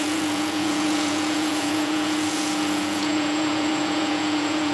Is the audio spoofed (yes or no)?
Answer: yes